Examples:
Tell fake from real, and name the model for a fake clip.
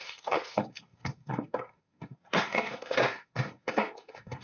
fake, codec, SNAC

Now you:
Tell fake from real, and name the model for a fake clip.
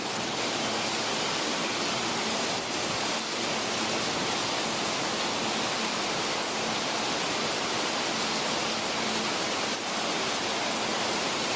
real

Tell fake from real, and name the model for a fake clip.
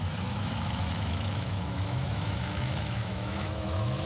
fake, autoencoder, DAC-VAE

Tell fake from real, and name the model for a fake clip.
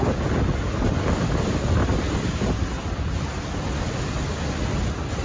real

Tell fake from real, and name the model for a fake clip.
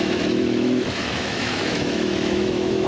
fake, autoencoder, DAC-VAE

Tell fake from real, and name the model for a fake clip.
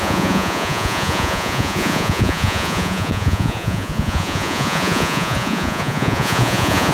fake, vocoder, Vocos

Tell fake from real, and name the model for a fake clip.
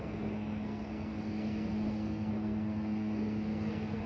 fake, codec, SNAC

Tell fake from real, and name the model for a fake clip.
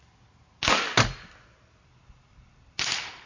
real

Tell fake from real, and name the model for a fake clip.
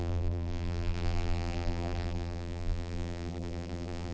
fake, vocoder, BigVGAN v2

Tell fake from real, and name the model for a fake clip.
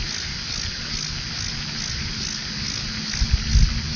real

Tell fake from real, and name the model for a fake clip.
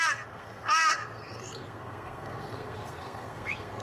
fake, codec, SNAC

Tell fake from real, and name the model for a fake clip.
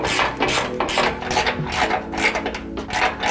real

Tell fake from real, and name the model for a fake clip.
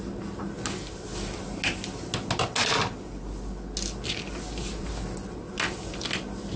real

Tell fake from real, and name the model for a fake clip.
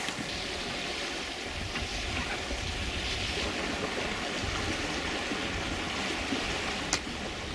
real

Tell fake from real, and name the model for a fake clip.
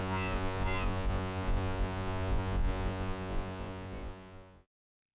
fake, vocoder, Vocos